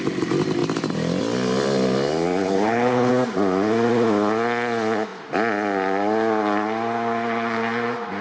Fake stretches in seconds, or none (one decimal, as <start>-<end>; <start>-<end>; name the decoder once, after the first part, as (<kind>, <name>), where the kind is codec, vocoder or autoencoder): 2.4-3.1 (codec, HILCodec)